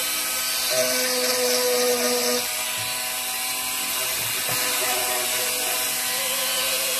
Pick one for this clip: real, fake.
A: real